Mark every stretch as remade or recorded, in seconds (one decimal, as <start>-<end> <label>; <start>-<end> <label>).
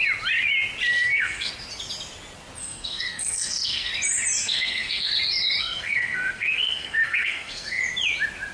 0.0-0.9 recorded; 0.9-1.5 remade; 1.5-2.6 recorded; 2.6-3.9 remade; 3.9-4.4 recorded; 4.4-5.1 remade; 5.1-5.6 recorded; 5.6-7.8 remade; 7.8-8.5 recorded